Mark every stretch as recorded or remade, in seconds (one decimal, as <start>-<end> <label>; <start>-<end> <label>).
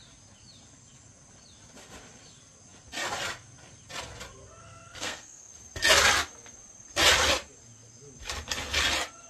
0.0-4.6 recorded; 4.6-5.5 remade; 5.5-9.3 recorded